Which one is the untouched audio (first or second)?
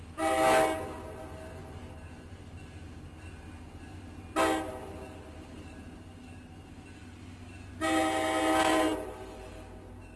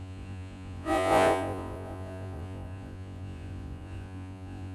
first